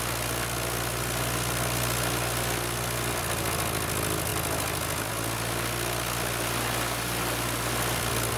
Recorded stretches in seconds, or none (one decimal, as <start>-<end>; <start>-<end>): 0.0-8.4